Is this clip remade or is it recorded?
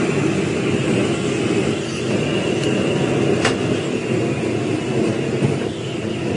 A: recorded